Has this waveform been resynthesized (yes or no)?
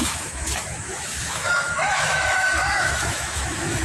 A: yes